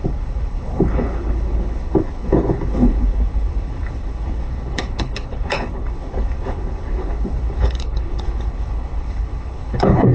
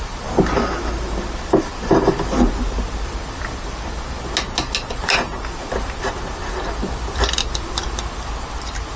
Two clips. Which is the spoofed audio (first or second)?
first